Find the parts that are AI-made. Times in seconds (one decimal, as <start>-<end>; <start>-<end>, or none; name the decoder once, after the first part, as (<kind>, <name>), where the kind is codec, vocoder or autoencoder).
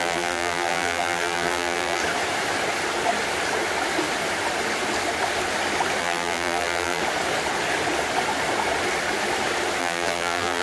0.0-2.0 (vocoder, BigVGAN v2); 6.0-7.0; 9.8-10.6